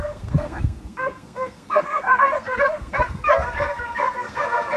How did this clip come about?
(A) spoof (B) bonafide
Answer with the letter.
A